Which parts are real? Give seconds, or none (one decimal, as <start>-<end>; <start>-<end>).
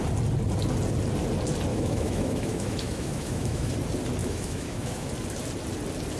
0.0-1.7; 3.7-4.2; 5.1-6.2